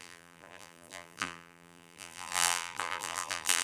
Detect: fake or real fake